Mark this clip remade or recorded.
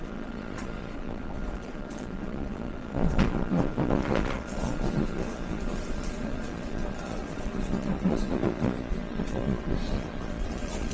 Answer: remade